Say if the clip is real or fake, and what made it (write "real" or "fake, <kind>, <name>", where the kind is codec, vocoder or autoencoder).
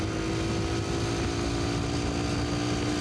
real